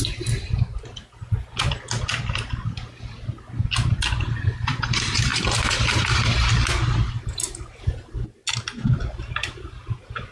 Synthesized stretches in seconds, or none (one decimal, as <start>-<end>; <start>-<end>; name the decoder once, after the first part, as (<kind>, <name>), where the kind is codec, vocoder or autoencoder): none